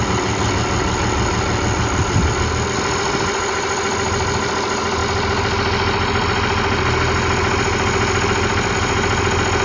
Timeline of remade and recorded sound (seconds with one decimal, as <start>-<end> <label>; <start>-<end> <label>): 0.0-9.6 recorded